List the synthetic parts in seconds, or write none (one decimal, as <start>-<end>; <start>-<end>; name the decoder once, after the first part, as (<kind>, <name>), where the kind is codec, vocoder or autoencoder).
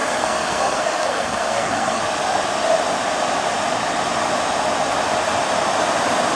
0.0-2.0 (codec, SNAC)